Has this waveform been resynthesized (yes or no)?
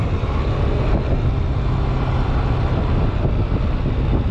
no